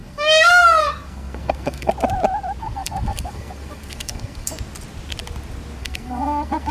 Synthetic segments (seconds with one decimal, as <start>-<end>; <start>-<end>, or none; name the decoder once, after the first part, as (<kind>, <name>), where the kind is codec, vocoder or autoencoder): 0.0-1.9 (codec, SNAC); 2.6-4.5; 5.8-6.7